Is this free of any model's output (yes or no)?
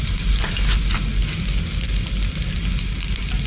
yes